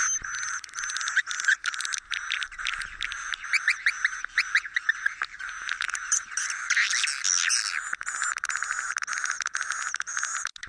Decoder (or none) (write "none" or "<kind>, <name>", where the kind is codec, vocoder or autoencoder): none